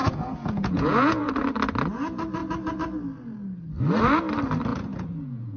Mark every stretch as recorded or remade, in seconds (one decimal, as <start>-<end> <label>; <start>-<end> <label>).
0.0-1.3 remade; 1.3-4.7 recorded; 4.7-5.6 remade